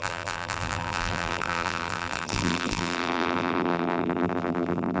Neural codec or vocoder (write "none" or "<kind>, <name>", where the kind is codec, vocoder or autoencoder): vocoder, BigVGAN v2